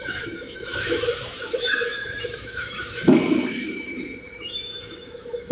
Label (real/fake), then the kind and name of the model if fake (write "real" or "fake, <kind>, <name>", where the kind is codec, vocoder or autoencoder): fake, autoencoder, DAC-VAE